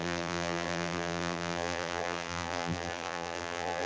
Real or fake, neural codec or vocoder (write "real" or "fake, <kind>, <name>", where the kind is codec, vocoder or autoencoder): fake, vocoder, BigVGAN v2